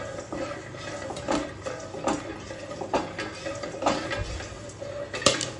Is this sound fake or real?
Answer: real